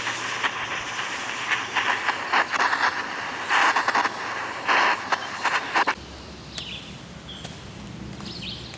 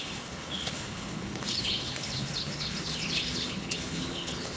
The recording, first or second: first